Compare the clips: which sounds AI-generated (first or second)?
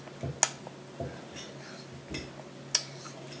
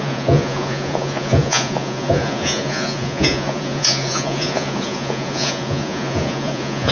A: second